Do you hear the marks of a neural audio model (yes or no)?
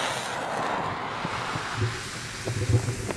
no